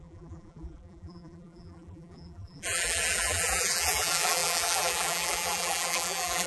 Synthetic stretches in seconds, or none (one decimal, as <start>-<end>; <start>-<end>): 0.0-6.5